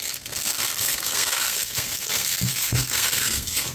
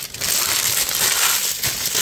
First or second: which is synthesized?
first